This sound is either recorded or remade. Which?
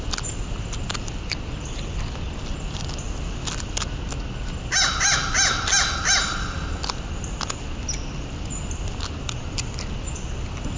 recorded